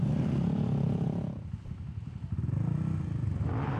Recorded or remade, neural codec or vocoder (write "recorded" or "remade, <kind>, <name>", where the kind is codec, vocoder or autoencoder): recorded